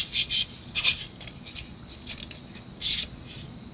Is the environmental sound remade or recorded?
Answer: recorded